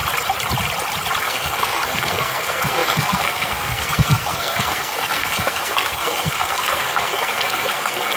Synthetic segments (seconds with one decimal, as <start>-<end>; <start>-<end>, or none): 1.2-8.2